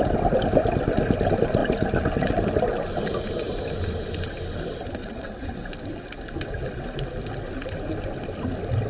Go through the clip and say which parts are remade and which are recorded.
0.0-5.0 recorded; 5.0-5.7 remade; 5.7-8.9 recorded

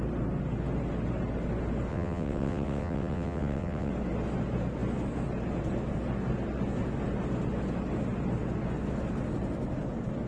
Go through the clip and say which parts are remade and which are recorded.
0.0-1.9 recorded; 1.9-3.9 remade; 3.9-10.3 recorded